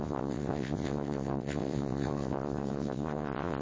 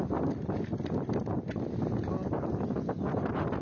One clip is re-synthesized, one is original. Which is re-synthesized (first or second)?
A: first